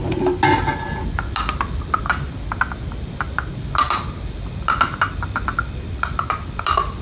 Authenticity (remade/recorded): recorded